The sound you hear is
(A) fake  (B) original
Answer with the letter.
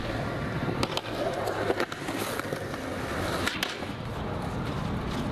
B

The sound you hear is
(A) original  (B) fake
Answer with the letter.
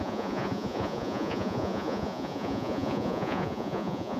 B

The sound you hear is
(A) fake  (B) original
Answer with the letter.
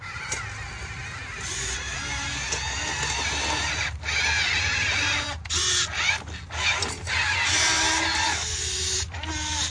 B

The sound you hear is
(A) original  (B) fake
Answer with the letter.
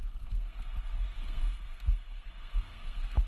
B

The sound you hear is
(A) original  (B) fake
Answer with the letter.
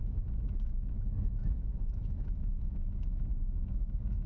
B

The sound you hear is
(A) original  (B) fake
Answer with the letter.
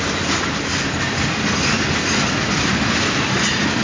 A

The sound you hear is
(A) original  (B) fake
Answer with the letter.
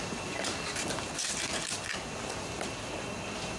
A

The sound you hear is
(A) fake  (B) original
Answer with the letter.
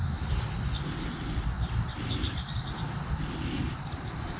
B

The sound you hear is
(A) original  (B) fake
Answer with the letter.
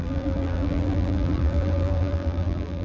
B